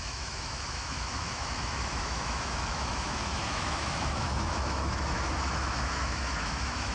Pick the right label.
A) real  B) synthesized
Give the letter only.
B